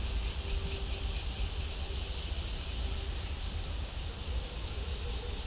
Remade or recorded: recorded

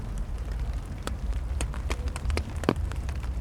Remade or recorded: remade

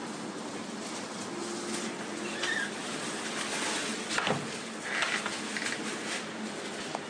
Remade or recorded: recorded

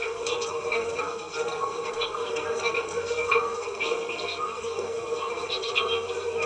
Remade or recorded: remade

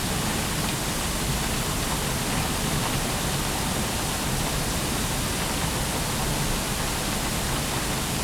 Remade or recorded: recorded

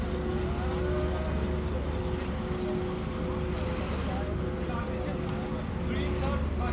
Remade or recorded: recorded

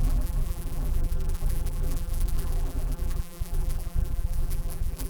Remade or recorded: remade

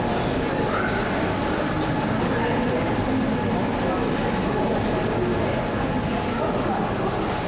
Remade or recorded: recorded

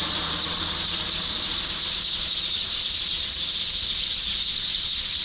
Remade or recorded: remade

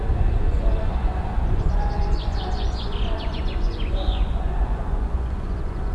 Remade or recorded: remade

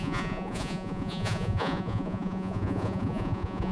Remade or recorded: remade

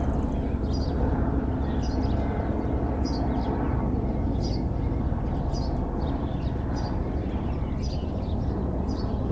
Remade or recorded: recorded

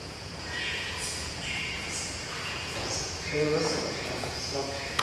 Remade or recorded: remade